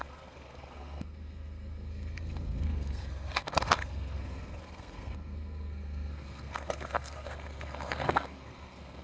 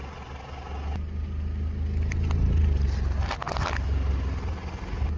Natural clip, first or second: second